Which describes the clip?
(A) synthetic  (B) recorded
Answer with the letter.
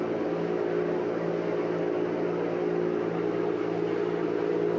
B